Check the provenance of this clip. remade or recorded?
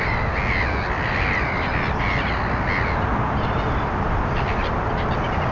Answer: recorded